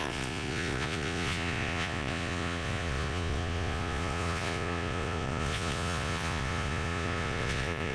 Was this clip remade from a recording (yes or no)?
yes